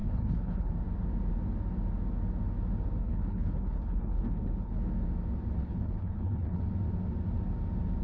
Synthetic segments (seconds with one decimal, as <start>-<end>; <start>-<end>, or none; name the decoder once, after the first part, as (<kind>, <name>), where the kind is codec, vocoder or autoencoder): 0.0-0.7 (codec, HILCodec); 3.0-4.8; 5.6-6.6